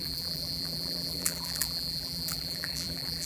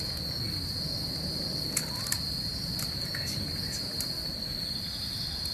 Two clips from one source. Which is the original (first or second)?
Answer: second